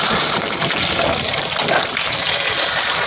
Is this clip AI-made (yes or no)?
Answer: no